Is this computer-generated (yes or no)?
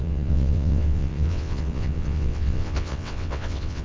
yes